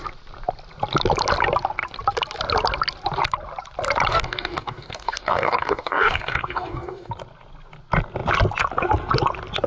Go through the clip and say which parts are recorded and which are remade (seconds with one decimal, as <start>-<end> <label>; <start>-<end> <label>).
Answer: 0.0-4.1 recorded; 4.1-7.1 remade; 7.1-9.7 recorded